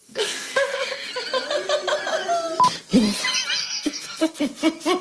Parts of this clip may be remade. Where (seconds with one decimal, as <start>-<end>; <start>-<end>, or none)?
0.0-1.1; 3.6-4.3